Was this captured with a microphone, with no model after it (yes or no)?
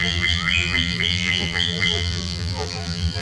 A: no